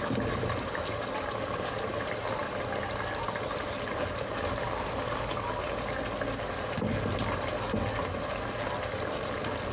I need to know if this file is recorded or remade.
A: recorded